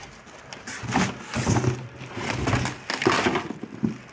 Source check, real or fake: real